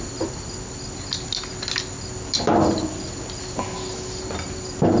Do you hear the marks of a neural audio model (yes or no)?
no